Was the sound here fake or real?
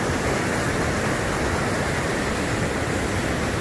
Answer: real